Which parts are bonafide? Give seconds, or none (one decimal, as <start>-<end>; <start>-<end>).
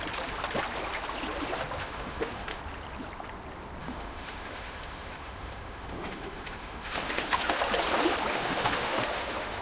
0.0-1.8; 2.6-3.8; 7.6-8.3